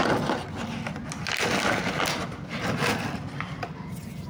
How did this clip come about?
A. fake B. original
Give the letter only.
B